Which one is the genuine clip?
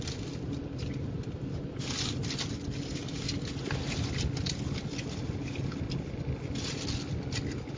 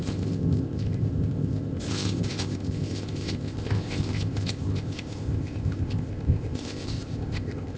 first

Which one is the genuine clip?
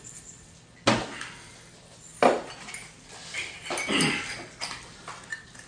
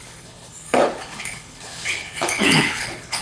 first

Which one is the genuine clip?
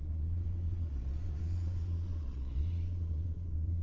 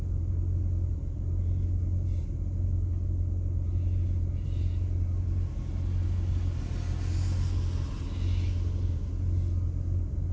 second